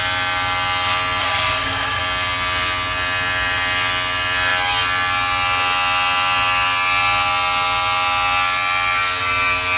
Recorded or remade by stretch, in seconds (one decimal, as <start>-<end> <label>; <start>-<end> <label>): 0.0-1.2 recorded; 1.2-2.0 remade; 2.0-9.8 recorded